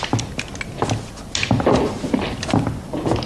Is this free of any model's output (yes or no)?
yes